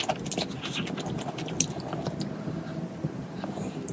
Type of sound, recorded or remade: recorded